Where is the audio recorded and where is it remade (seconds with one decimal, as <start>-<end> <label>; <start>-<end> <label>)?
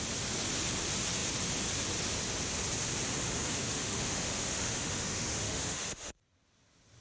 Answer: 0.0-3.6 recorded; 3.6-6.1 remade; 6.1-7.0 recorded